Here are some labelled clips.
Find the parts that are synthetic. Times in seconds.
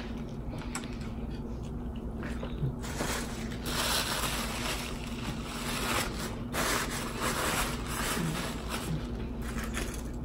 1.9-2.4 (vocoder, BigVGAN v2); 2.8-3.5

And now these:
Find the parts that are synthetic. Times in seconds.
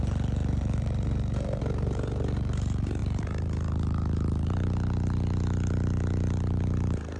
0.0-7.2 (vocoder, BigVGAN v2)